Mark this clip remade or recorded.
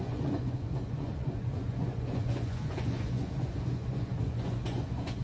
remade